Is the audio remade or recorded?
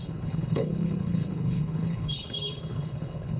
remade